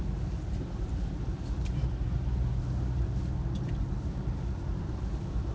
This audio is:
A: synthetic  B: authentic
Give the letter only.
B